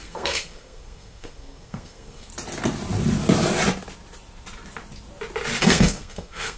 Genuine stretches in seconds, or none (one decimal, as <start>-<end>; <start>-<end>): 2.3-5.6